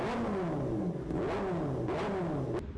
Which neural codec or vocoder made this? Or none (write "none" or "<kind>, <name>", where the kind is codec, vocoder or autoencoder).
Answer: none